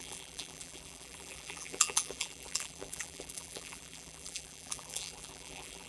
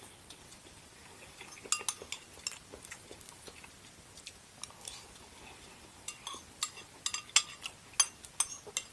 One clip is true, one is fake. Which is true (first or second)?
second